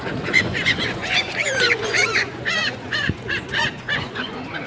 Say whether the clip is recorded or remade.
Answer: remade